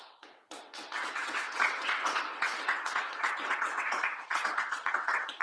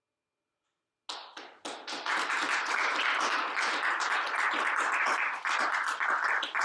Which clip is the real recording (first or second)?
second